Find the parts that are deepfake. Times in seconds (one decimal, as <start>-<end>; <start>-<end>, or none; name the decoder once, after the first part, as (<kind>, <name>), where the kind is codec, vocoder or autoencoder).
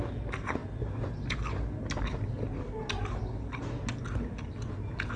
none